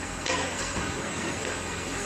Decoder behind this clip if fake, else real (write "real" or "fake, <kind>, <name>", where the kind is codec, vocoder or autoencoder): fake, codec, SNAC